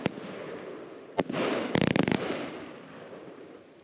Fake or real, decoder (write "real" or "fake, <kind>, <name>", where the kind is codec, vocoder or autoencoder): real